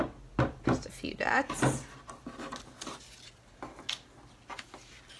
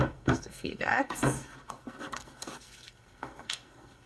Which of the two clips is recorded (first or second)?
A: first